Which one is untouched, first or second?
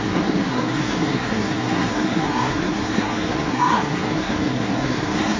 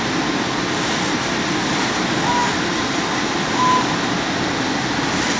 second